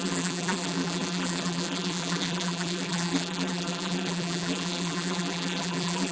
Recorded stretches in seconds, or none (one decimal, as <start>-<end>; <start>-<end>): none

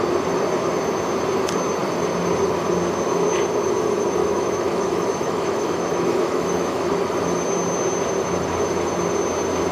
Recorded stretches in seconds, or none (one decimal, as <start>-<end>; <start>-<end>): 0.0-4.2; 7.0-9.7

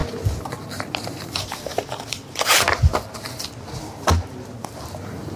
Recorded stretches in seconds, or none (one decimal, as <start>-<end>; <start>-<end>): 0.0-5.4

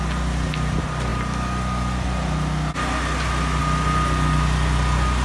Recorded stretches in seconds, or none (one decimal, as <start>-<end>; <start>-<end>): 0.0-5.2

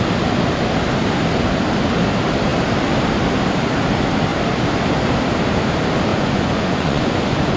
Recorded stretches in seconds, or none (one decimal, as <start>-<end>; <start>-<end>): 0.0-6.1

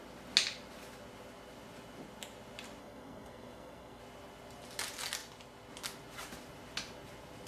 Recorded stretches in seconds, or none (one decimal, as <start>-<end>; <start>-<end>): 0.0-2.8; 4.0-7.5

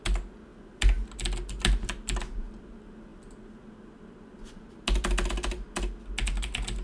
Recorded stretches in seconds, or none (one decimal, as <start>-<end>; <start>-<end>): 0.0-6.8

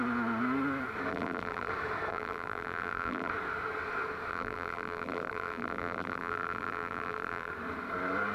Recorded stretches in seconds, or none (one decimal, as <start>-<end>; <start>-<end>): 0.0-1.1; 1.7-2.1; 3.3-4.3; 7.5-8.3